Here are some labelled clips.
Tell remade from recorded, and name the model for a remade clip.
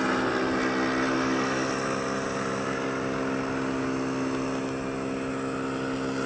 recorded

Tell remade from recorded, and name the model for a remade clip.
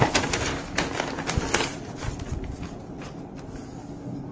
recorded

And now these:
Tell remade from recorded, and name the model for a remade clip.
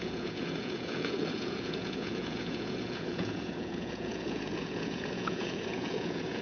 remade, vocoder, Vocos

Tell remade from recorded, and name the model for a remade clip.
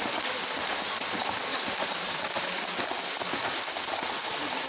recorded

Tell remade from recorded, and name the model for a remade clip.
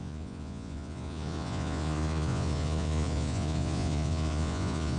remade, vocoder, Vocos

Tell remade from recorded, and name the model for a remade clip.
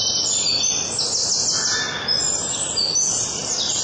recorded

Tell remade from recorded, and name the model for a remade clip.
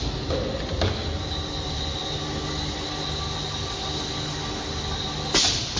recorded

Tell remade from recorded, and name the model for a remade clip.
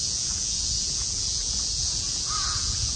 remade, vocoder, Vocos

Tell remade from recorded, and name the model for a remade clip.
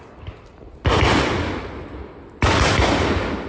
recorded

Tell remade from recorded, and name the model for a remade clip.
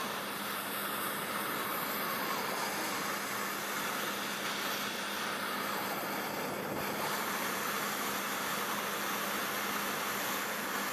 recorded